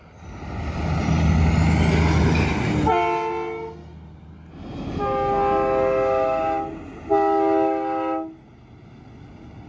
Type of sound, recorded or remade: recorded